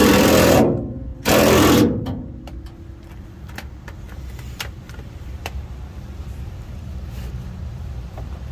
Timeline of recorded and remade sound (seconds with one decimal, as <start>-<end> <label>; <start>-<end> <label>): 0.0-8.5 remade